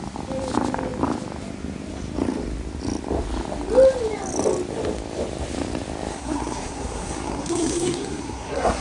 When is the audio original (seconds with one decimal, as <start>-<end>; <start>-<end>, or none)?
0.0-6.1